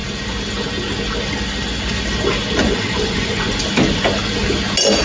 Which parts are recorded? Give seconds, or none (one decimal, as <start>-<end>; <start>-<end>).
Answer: 0.0-2.6; 3.6-5.0